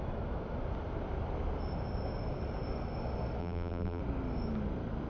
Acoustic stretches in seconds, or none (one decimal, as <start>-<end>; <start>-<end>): 0.0-3.4; 4.0-5.1